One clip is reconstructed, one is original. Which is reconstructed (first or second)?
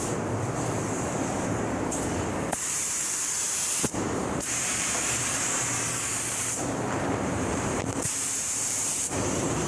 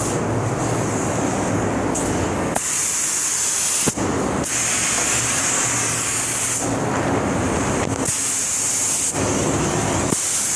first